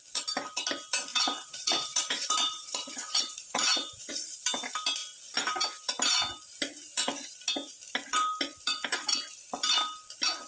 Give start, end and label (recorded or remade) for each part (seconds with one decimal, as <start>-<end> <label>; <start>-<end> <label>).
0.0-1.1 recorded; 1.1-4.1 remade; 4.1-10.5 recorded